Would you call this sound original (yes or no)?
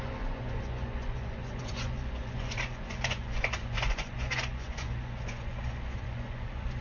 no